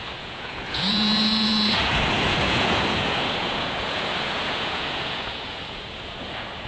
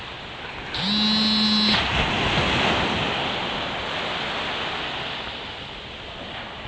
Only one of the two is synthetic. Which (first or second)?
first